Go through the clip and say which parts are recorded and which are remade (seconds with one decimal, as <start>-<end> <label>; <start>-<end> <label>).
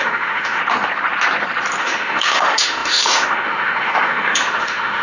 0.0-0.6 remade; 0.6-1.8 recorded; 1.8-5.0 remade